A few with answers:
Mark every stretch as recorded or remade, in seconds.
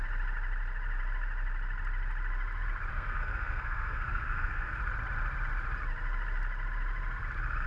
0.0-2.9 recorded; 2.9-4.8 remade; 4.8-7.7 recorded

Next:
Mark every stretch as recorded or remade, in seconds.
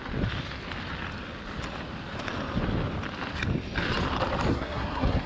0.0-4.5 recorded; 4.5-5.3 remade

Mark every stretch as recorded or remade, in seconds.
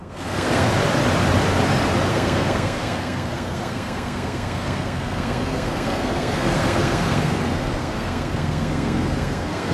0.0-0.7 remade; 0.7-2.1 recorded; 2.1-9.7 remade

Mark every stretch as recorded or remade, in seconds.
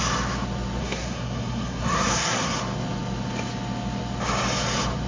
0.0-0.8 recorded; 0.8-2.6 remade; 2.6-5.1 recorded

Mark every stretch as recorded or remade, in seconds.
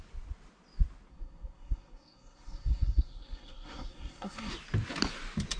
0.0-1.1 recorded; 1.1-4.5 remade; 4.5-5.6 recorded